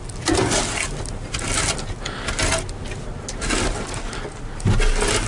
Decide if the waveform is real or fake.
real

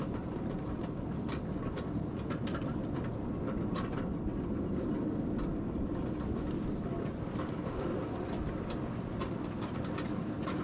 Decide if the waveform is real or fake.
real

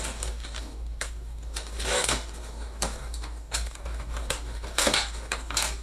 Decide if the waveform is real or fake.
fake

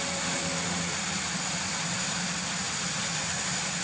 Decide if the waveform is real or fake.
real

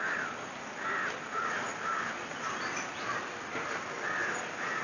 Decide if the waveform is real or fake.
real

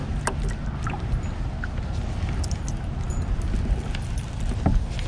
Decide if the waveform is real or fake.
real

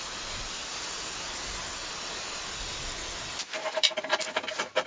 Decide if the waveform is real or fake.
fake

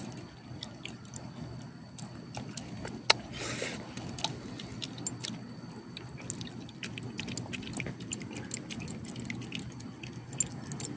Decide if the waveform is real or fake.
real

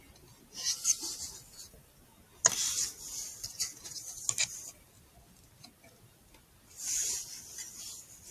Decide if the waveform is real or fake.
real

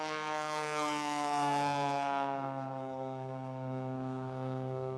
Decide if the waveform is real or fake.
fake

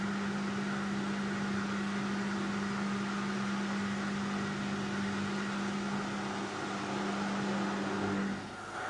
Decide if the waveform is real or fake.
real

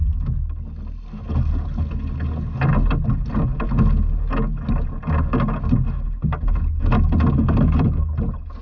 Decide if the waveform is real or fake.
real